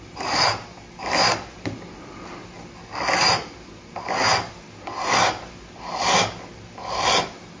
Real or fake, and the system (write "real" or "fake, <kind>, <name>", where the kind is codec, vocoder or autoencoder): real